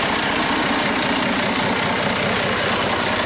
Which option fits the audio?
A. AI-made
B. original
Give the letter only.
B